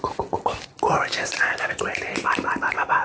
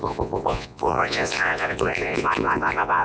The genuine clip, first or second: first